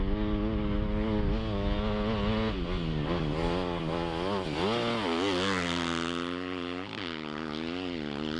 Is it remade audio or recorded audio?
recorded